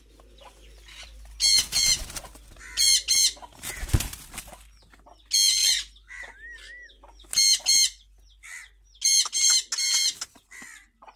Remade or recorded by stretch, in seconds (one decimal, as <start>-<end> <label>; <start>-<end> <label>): 0.0-11.2 recorded